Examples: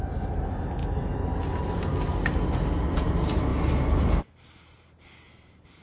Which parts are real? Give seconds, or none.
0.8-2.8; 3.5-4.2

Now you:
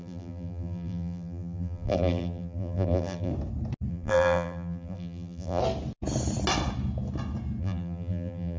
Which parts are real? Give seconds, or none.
3.3-3.9; 5.6-7.6

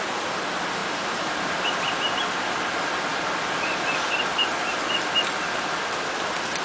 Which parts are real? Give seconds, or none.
0.0-0.8; 2.5-6.6

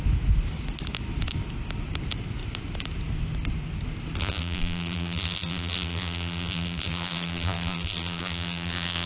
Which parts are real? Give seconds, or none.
0.0-4.2